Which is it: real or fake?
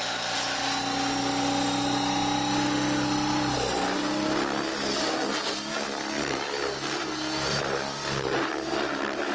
real